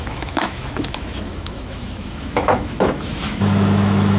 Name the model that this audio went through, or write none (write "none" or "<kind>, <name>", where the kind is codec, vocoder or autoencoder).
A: autoencoder, DAC-VAE